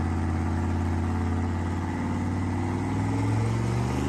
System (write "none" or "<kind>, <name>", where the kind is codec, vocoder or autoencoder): none